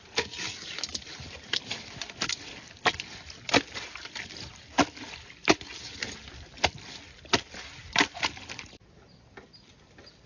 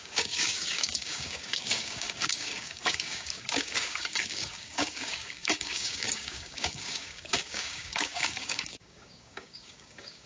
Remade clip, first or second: second